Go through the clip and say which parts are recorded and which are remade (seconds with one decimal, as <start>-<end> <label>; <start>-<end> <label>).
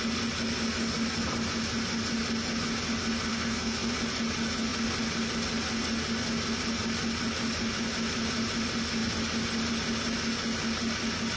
0.0-3.3 recorded; 3.3-3.9 remade; 3.9-11.4 recorded